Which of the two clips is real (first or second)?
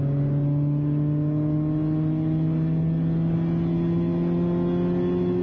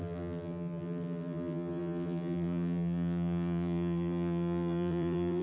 first